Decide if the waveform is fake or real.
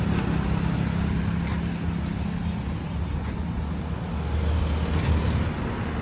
real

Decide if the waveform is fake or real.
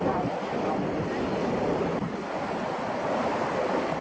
real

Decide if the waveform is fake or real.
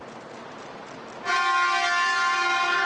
real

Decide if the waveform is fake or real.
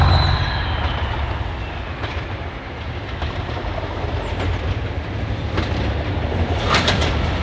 real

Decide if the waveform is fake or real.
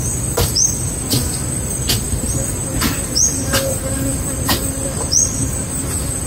real